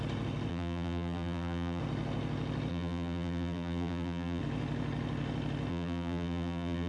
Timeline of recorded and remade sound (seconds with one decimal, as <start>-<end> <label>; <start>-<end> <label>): 0.0-0.5 recorded; 0.5-1.8 remade; 1.8-2.7 recorded; 2.7-4.4 remade; 4.4-5.7 recorded; 5.7-6.9 remade